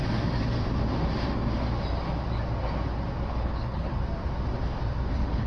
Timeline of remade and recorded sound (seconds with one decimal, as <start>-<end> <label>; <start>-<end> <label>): 0.0-3.3 recorded; 3.3-3.9 remade; 3.9-5.1 recorded; 5.1-5.5 remade

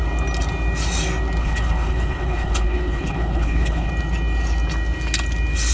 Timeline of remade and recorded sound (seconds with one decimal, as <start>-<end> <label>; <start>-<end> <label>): 0.0-1.4 recorded; 1.4-3.9 remade; 3.9-5.7 recorded

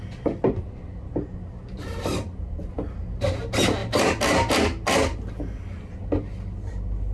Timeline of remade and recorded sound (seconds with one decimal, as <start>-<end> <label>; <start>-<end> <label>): 0.0-7.1 recorded

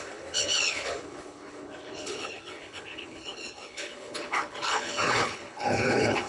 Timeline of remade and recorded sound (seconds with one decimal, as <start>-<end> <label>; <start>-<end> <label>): 0.0-6.3 remade